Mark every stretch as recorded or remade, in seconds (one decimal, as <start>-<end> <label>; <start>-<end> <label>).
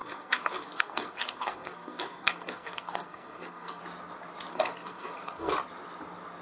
0.0-3.8 remade; 3.8-4.5 recorded; 4.5-5.5 remade; 5.5-6.4 recorded